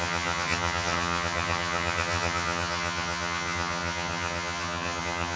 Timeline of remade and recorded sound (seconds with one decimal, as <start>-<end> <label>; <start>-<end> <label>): 0.0-5.4 remade